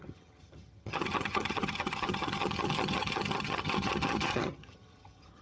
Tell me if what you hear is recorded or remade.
remade